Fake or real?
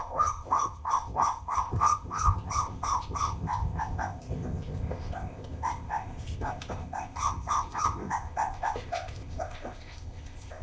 fake